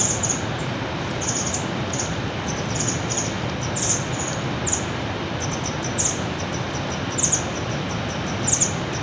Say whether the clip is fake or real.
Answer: real